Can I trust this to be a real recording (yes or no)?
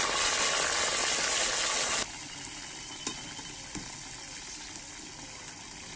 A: yes